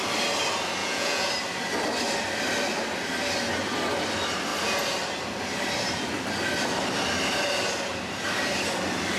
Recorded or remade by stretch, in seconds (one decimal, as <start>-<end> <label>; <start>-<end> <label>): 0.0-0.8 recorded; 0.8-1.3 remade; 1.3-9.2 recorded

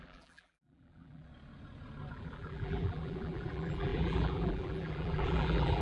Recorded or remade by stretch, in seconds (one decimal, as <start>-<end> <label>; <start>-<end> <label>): 0.0-1.3 remade; 1.3-2.1 recorded; 2.1-5.8 remade

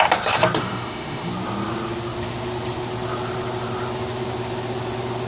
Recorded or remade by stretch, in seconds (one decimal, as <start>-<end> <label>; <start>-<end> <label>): 0.0-0.6 recorded; 0.6-1.3 remade; 1.3-5.3 recorded